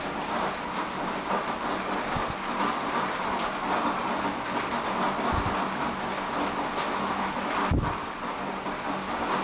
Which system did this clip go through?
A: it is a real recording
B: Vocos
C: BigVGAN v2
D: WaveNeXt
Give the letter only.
A